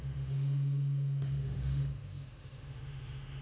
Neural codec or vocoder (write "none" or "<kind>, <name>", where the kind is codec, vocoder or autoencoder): autoencoder, DAC-VAE